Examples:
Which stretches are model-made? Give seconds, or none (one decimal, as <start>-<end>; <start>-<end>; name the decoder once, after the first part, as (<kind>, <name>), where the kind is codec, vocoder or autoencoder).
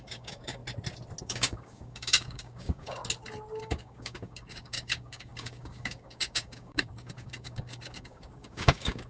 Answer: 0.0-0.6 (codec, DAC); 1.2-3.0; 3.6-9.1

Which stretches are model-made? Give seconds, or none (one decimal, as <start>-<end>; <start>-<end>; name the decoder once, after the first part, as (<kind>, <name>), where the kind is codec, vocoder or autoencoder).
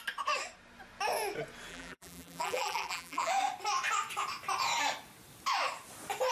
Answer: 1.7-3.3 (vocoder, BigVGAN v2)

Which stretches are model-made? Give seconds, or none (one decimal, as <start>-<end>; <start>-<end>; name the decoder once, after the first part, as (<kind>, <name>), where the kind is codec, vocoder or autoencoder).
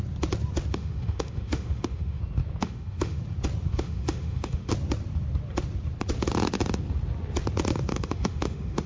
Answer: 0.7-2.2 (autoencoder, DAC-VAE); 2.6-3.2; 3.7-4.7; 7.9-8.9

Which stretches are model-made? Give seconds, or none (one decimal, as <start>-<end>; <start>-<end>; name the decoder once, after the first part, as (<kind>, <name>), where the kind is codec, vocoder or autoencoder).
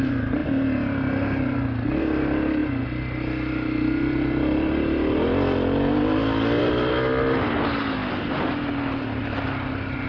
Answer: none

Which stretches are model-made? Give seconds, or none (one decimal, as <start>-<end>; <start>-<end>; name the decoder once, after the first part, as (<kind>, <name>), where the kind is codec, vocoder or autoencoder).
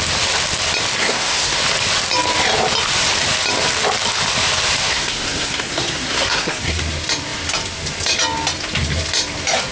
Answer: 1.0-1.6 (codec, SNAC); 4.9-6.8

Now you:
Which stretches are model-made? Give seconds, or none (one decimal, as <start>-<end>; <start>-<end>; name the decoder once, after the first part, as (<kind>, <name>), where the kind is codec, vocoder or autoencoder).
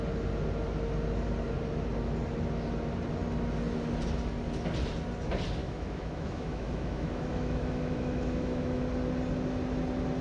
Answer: 5.6-8.8 (autoencoder, DAC-VAE)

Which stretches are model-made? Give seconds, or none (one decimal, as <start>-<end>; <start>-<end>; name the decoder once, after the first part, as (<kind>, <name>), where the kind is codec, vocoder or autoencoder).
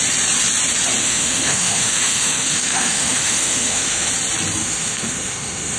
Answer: 1.0-4.1 (autoencoder, DAC-VAE); 4.6-5.8